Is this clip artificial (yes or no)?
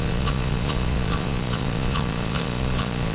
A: yes